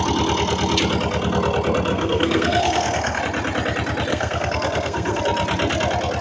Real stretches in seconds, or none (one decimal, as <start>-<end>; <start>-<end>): 0.0-1.9; 3.2-4.1; 5.2-6.2